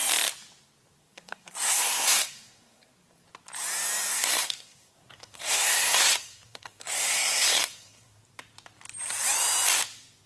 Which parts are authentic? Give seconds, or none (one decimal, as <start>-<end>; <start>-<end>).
0.0-1.0; 2.9-4.1; 8.2-10.3